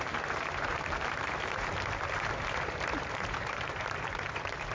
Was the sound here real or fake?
fake